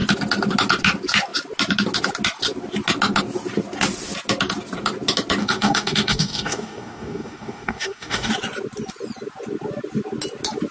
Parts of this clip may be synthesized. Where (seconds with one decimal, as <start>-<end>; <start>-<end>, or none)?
5.4-8.3